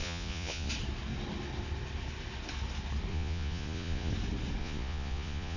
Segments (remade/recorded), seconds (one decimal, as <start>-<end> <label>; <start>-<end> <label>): 0.0-0.7 remade; 0.7-3.1 recorded; 3.1-4.1 remade; 4.1-4.6 recorded; 4.6-5.6 remade